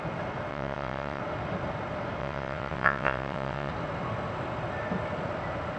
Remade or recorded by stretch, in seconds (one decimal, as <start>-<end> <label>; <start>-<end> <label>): 0.0-0.5 recorded; 0.5-1.2 remade; 1.2-2.2 recorded; 2.2-3.7 remade; 3.7-5.8 recorded